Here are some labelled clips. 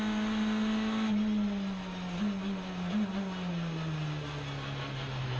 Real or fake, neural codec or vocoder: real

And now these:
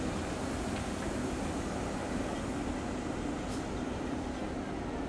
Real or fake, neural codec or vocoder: real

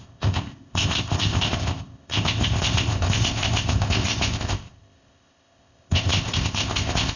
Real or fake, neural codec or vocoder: fake, codec, ZipCodec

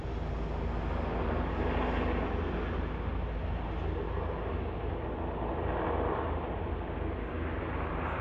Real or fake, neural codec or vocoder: real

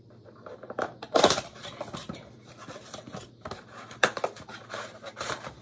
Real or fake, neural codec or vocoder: fake, vocoder, BigVGAN v2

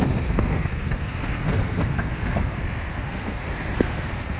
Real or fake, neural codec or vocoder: fake, codec, SNAC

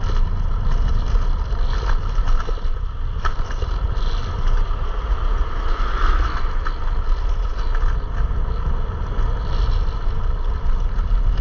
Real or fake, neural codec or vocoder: real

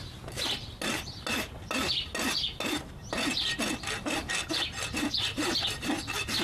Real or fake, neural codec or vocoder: real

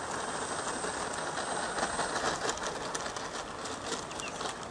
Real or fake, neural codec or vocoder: real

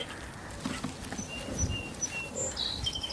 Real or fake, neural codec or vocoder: real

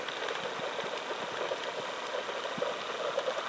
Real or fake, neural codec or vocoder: real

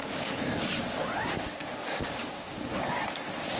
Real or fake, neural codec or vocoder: fake, codec, DAC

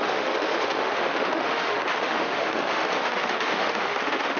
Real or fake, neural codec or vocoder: fake, autoencoder, DAC-VAE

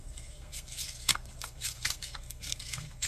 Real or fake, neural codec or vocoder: fake, codec, SNAC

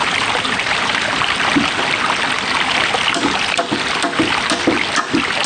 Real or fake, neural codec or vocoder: real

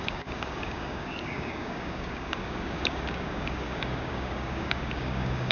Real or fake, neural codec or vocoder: fake, codec, DAC